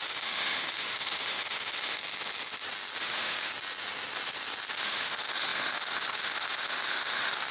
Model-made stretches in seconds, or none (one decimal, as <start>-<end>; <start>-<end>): 0.0-2.0; 3.0-3.5; 4.7-7.5